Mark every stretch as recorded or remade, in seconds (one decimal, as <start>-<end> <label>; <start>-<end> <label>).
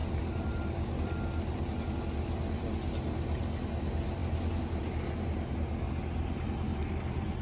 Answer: 0.0-7.4 recorded